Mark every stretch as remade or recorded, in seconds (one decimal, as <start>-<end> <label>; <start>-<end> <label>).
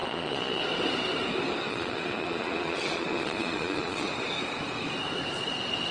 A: 0.0-0.6 remade; 0.6-1.6 recorded; 1.6-4.1 remade; 4.1-5.9 recorded